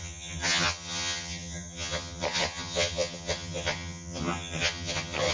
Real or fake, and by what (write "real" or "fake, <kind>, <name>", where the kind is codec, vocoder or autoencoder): fake, vocoder, HiFi-GAN